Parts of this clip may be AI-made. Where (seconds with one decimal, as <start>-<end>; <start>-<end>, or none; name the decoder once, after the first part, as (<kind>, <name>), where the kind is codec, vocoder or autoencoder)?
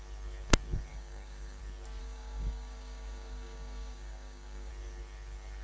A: 0.9-1.6 (codec, DAC); 2.0-4.7